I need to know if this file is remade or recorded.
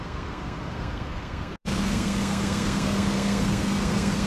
remade